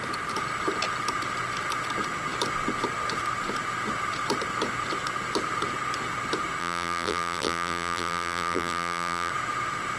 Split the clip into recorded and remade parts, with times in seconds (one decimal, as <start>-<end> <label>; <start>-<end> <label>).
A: 0.0-6.6 recorded; 6.6-9.3 remade; 9.3-10.0 recorded

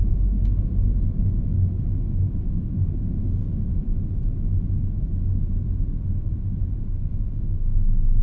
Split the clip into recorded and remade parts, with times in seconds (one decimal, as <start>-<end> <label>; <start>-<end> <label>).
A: 0.0-0.7 remade; 0.7-2.3 recorded; 2.3-3.7 remade; 3.7-7.1 recorded; 7.1-8.2 remade

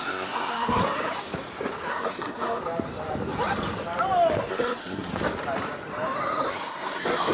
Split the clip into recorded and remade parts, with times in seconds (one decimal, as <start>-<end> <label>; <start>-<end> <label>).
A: 0.0-0.8 remade; 0.8-1.9 recorded; 1.9-2.6 remade; 2.6-4.5 recorded; 4.5-5.1 remade; 5.1-6.5 recorded; 6.5-7.3 remade

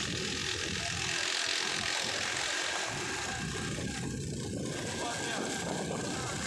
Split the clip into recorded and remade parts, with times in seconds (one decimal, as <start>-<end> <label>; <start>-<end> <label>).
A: 0.0-6.5 recorded

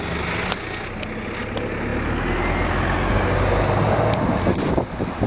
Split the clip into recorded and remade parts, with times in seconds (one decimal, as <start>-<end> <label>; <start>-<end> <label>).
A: 0.0-5.3 recorded

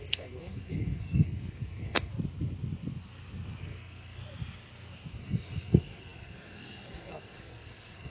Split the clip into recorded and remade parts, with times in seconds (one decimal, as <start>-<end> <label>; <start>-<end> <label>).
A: 0.0-2.1 remade; 2.1-3.6 recorded; 3.6-4.2 remade; 4.2-5.2 recorded; 5.2-8.1 remade

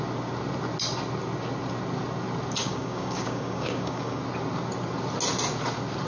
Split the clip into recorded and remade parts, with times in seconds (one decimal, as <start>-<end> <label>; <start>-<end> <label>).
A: 0.0-2.6 recorded; 2.6-4.2 remade; 4.2-6.1 recorded